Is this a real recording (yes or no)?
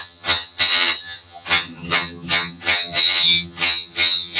no